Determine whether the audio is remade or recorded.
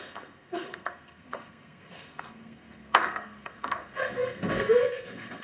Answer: remade